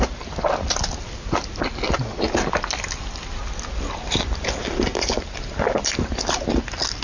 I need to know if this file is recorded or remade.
recorded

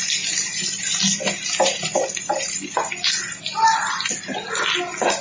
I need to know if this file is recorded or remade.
recorded